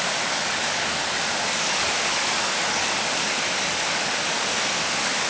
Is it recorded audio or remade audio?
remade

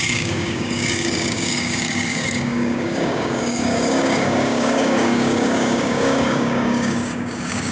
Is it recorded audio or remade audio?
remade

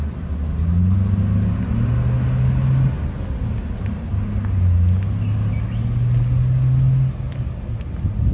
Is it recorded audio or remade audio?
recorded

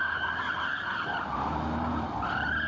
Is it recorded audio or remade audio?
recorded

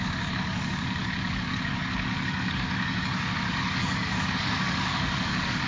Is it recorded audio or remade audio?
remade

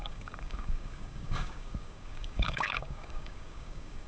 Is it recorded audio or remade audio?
remade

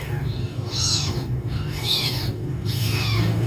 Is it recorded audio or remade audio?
remade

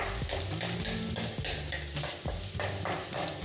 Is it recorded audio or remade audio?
recorded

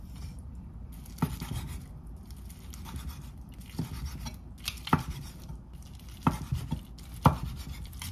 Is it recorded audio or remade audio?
recorded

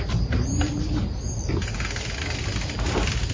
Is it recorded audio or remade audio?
recorded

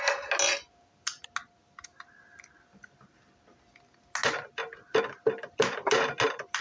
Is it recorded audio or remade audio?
recorded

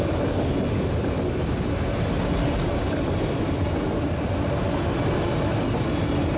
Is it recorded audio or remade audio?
recorded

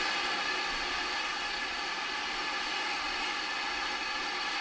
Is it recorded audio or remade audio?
recorded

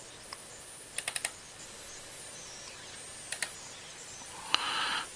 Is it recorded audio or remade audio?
recorded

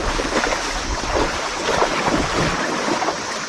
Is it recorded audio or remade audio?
recorded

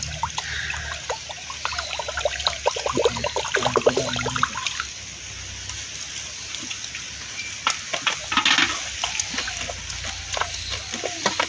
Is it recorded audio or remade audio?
recorded